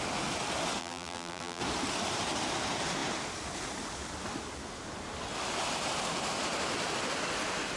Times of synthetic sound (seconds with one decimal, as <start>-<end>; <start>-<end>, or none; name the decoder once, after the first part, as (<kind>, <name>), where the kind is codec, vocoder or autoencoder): 0.8-1.6 (vocoder, BigVGAN v2)